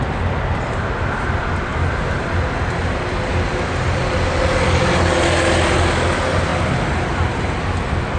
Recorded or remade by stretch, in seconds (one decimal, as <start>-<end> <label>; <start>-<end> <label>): 0.0-0.5 recorded; 0.5-1.1 remade; 1.1-6.5 recorded; 6.5-7.6 remade; 7.6-8.2 recorded